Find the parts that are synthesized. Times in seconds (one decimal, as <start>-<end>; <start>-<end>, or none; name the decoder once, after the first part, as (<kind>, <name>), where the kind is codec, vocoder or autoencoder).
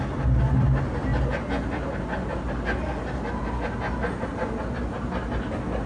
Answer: none